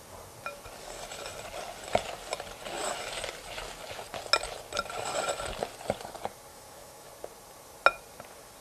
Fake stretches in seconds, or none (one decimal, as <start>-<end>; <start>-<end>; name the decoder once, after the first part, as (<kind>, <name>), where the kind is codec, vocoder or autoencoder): 6.5-7.1 (autoencoder, DAC-VAE)